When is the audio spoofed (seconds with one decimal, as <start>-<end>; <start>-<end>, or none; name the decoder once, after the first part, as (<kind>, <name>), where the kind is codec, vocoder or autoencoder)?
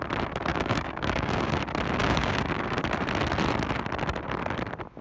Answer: 0.5-1.6 (codec, DAC); 2.0-2.8